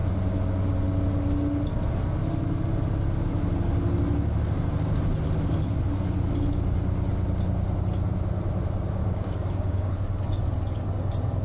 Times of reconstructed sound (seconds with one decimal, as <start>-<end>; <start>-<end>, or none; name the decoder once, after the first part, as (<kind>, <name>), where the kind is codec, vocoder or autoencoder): 9.0-9.9 (codec, DAC)

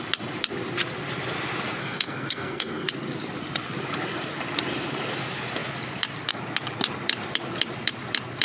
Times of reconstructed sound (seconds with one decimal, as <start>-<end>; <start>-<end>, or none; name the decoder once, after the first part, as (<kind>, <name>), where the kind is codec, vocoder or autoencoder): 1.8-2.9 (codec, SNAC)

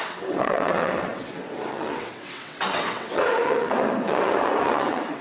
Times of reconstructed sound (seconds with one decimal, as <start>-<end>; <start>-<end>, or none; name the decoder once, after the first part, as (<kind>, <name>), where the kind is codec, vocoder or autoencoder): 0.0-5.2 (vocoder, WaveNeXt)

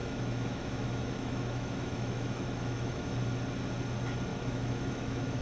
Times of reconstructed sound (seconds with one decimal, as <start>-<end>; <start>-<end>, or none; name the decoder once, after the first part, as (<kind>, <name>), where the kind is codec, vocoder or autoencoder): 0.0-3.2 (autoencoder, DAC-VAE); 4.3-5.4

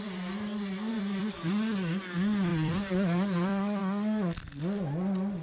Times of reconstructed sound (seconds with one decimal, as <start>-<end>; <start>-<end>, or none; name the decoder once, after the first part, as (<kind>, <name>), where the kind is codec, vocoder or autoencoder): 0.9-1.5 (vocoder, BigVGAN v2); 2.5-3.8